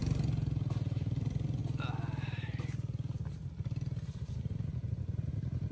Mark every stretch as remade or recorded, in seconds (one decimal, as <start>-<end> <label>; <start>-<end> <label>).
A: 0.0-5.7 recorded